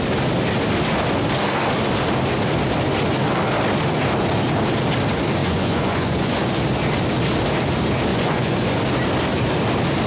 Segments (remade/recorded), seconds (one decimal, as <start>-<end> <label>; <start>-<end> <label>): 0.0-5.4 recorded; 5.4-6.4 remade; 6.4-8.1 recorded; 8.1-8.8 remade; 8.8-10.1 recorded